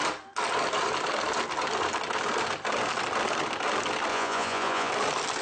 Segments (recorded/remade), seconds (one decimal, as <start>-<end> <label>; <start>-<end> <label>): 0.0-4.1 recorded; 4.1-4.9 remade; 4.9-5.4 recorded